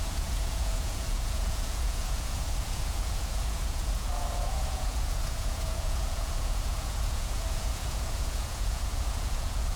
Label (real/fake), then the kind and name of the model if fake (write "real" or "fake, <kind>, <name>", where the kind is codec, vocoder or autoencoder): fake, vocoder, Vocos